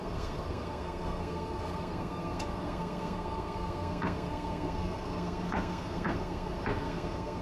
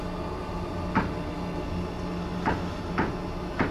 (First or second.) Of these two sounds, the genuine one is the second